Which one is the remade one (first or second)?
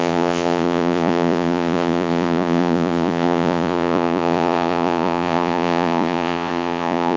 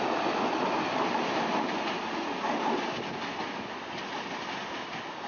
first